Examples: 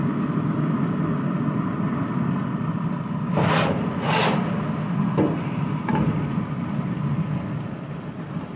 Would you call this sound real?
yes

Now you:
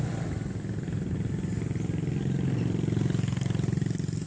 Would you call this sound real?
yes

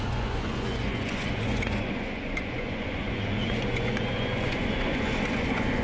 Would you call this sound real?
no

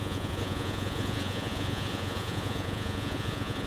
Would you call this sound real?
no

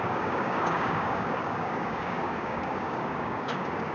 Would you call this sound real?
no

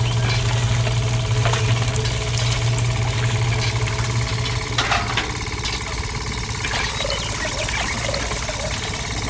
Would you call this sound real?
yes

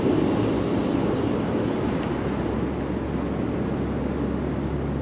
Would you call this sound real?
yes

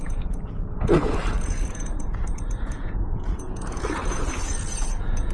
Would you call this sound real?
no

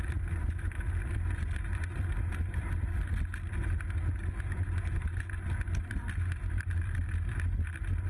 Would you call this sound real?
yes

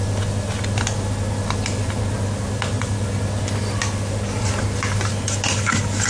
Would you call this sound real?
yes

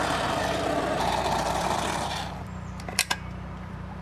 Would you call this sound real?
no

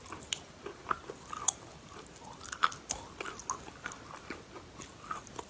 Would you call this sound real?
yes